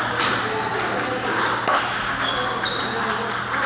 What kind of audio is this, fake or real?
real